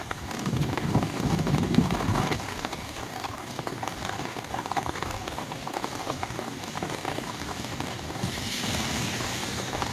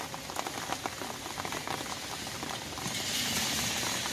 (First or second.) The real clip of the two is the second